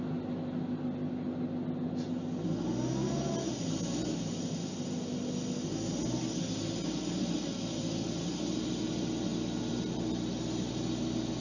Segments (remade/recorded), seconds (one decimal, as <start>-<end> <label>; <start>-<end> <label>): 0.0-11.4 recorded